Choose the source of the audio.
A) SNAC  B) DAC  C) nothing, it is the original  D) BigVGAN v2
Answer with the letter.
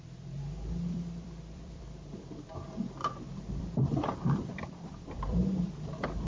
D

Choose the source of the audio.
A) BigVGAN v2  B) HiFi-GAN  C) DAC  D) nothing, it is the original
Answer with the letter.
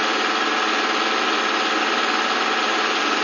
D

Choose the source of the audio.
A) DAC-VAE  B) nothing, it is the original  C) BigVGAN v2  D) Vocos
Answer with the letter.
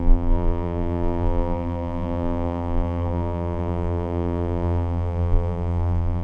C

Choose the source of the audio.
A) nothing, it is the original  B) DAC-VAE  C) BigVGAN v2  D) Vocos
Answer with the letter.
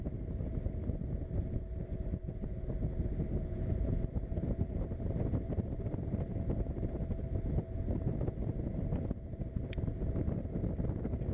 A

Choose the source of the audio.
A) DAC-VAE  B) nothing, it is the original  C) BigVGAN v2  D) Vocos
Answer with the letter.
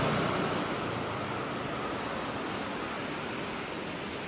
B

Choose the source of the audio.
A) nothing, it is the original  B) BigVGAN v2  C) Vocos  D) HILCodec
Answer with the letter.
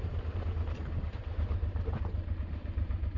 B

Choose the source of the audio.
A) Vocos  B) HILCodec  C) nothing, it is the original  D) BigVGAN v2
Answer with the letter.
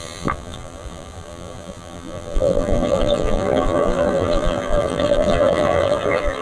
D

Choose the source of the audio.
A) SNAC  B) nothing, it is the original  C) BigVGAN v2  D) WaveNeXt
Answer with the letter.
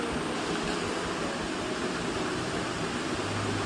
C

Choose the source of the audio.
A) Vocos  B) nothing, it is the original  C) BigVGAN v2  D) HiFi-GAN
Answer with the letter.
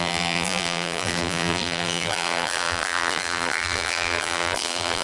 C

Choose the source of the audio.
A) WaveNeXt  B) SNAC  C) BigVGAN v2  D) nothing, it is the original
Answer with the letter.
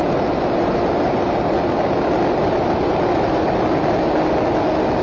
D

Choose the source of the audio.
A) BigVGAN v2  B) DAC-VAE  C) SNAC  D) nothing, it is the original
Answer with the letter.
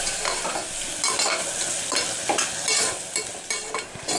D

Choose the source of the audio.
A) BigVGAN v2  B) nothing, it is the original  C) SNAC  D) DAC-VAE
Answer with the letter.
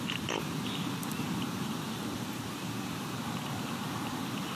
A